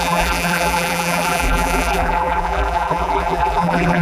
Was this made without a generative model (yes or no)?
no